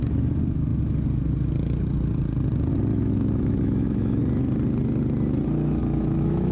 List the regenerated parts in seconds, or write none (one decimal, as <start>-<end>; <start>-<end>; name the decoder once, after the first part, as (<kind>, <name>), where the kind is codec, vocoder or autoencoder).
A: 2.9-4.2 (autoencoder, DAC-VAE); 5.8-6.5